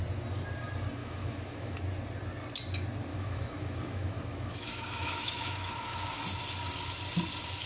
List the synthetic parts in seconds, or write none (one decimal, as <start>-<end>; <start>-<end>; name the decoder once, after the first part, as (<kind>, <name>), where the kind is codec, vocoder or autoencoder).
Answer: 1.0-1.8 (autoencoder, DAC-VAE); 3.1-6.2